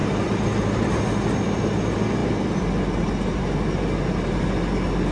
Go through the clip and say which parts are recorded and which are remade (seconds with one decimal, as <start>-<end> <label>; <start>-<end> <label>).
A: 0.0-5.1 recorded